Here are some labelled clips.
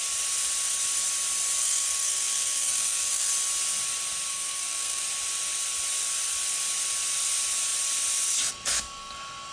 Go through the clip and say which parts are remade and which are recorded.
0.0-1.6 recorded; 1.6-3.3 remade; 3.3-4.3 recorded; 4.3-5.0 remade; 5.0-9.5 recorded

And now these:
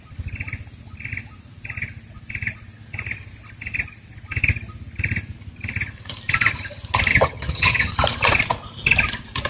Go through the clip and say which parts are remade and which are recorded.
0.0-7.1 recorded; 7.1-7.9 remade; 7.9-9.5 recorded

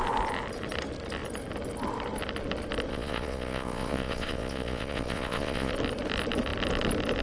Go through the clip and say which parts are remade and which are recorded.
0.0-2.9 recorded; 2.9-5.7 remade; 5.7-7.2 recorded

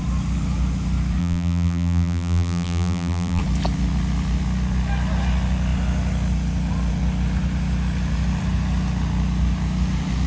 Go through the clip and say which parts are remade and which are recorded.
0.0-1.2 recorded; 1.2-3.4 remade; 3.4-10.3 recorded

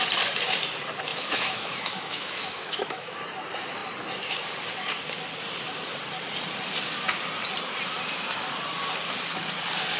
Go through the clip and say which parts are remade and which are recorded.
0.0-1.1 recorded; 1.1-3.2 remade; 3.2-10.0 recorded

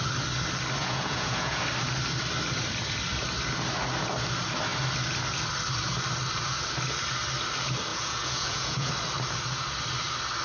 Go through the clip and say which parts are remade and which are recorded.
0.0-0.8 recorded; 0.8-1.6 remade; 1.6-7.9 recorded; 7.9-8.9 remade; 8.9-10.4 recorded

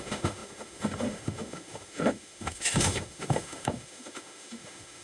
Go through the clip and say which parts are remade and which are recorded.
0.0-5.0 remade

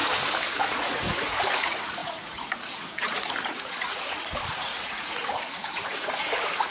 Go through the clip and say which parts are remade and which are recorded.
0.0-0.5 recorded; 0.5-6.7 remade